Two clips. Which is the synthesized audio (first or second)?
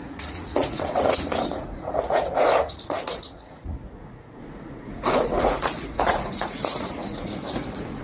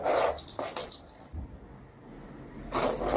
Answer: first